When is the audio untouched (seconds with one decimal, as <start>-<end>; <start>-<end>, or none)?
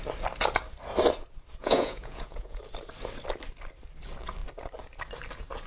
0.0-1.6; 2.6-5.7